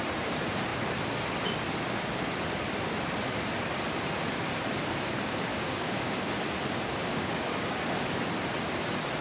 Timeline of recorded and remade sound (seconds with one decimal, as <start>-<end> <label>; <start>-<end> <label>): 0.0-5.5 recorded; 5.5-6.3 remade; 6.3-7.0 recorded; 7.0-7.8 remade; 7.8-9.2 recorded

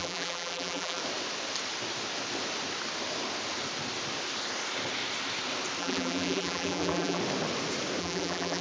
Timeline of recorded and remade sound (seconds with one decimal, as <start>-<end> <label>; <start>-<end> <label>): 0.0-1.0 remade; 1.0-5.8 recorded; 5.8-7.2 remade; 7.2-8.0 recorded; 8.0-8.6 remade